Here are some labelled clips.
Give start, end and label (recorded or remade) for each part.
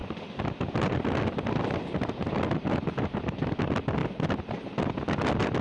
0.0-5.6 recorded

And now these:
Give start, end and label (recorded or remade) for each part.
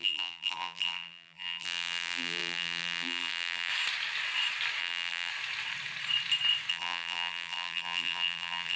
0.0-3.7 remade; 3.7-4.8 recorded; 4.8-5.3 remade; 5.3-6.7 recorded; 6.7-8.8 remade